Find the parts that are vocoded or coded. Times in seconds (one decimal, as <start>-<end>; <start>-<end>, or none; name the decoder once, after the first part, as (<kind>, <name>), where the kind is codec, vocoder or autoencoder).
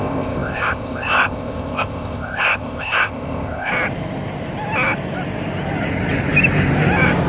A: 0.0-3.7 (codec, ZipCodec)